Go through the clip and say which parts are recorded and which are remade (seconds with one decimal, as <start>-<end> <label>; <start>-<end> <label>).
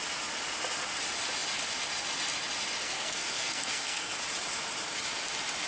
0.0-2.8 recorded; 2.8-4.2 remade; 4.2-5.7 recorded